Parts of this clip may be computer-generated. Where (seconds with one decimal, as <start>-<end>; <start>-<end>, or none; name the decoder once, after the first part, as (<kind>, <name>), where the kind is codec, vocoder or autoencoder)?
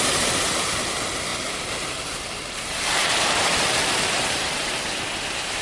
1.3-4.7 (vocoder, BigVGAN v2)